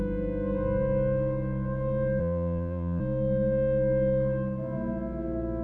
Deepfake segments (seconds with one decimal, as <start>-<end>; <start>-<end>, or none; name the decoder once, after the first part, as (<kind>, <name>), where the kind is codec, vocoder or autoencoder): 2.2-3.0 (vocoder, Vocos)